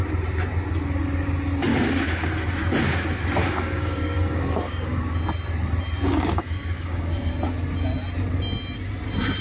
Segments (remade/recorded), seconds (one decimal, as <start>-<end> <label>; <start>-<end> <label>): 0.0-1.7 recorded; 1.7-2.3 remade; 2.3-3.4 recorded; 3.4-5.0 remade; 5.0-6.1 recorded; 6.1-7.3 remade; 7.3-9.4 recorded